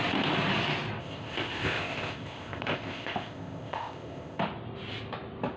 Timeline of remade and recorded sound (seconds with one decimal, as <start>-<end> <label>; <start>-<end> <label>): 0.0-1.0 recorded; 1.0-4.4 remade; 4.4-5.6 recorded